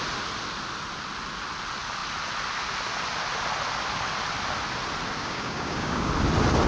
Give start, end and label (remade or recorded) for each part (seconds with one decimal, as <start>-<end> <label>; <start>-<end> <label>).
0.0-5.2 recorded; 5.2-6.1 remade; 6.1-6.7 recorded